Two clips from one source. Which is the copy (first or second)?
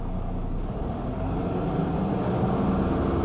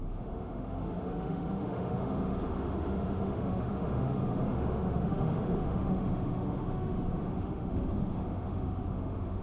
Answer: second